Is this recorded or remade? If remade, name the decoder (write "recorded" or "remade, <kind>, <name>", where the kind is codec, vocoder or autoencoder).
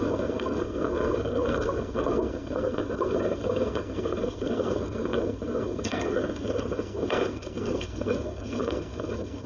remade, codec, SNAC